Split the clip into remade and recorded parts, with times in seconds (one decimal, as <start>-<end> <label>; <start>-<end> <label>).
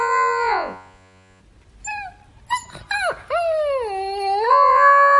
0.0-1.4 remade; 1.4-4.5 recorded; 4.5-5.2 remade